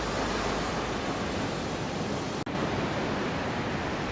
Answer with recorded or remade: recorded